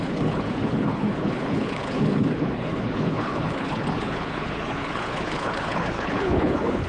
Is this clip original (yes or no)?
no